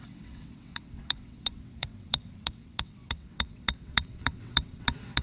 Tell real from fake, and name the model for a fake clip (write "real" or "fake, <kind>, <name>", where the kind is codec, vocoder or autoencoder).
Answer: fake, vocoder, WaveNeXt